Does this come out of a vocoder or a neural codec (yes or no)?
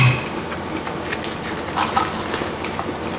no